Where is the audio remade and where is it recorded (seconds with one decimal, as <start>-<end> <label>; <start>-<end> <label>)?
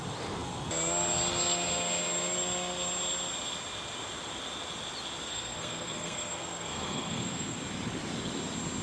0.0-5.3 recorded; 5.3-7.6 remade; 7.6-8.8 recorded